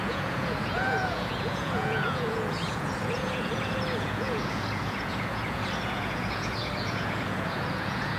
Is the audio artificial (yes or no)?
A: yes